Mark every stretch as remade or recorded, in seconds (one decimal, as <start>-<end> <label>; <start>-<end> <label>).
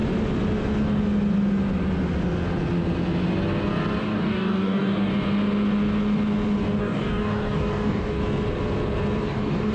0.0-4.0 recorded; 4.0-5.1 remade; 5.1-6.8 recorded; 6.8-8.2 remade; 8.2-9.2 recorded; 9.2-9.7 remade